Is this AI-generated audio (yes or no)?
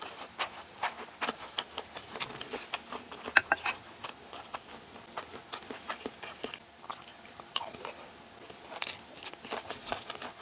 no